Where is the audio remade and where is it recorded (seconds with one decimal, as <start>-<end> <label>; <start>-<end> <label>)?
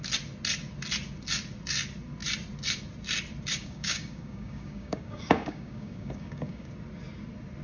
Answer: 0.0-3.5 recorded; 3.5-6.7 remade; 6.7-7.6 recorded